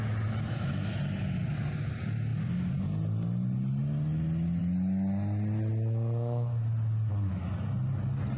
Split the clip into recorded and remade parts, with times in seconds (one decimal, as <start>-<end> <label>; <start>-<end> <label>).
0.0-8.4 recorded